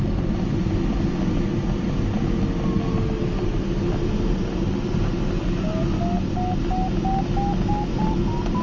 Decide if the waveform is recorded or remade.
recorded